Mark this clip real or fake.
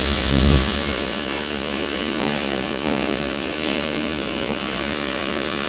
fake